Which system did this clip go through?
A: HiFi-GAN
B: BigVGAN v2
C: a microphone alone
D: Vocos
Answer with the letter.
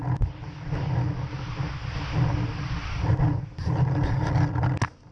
C